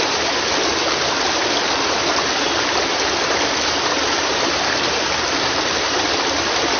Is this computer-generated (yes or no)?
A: yes